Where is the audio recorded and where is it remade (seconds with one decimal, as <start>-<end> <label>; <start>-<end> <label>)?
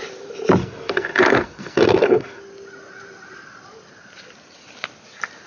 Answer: 0.0-0.6 recorded; 0.6-2.4 remade; 2.4-5.5 recorded